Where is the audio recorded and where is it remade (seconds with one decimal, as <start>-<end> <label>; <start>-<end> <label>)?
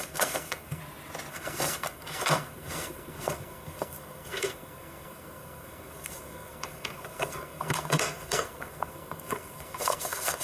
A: 0.0-0.8 remade; 0.8-1.3 recorded; 1.3-10.4 remade